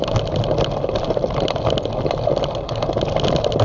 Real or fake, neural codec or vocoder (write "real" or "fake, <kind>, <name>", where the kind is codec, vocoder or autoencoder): real